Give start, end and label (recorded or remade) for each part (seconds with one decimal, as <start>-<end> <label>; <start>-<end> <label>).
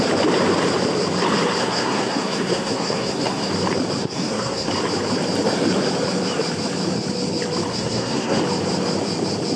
0.0-1.6 recorded; 1.6-3.5 remade; 3.5-4.0 recorded; 4.0-4.7 remade; 4.7-7.7 recorded; 7.7-8.4 remade; 8.4-9.6 recorded